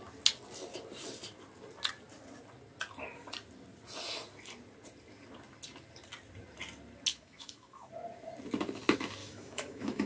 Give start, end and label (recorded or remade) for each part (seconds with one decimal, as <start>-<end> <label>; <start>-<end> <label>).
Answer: 0.0-7.1 recorded; 7.1-7.9 remade; 7.9-9.2 recorded; 9.2-10.1 remade